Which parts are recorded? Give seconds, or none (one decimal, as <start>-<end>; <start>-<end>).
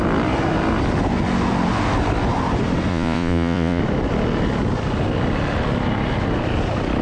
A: 0.0-2.9; 3.8-7.0